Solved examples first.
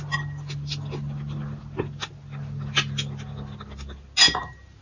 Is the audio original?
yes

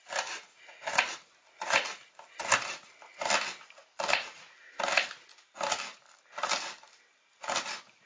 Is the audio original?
yes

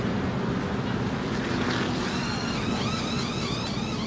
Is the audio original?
yes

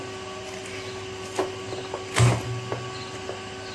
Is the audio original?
yes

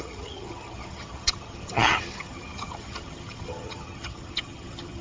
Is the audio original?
no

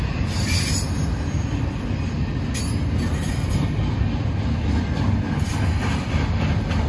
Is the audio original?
yes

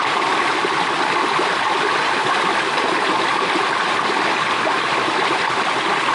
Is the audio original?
yes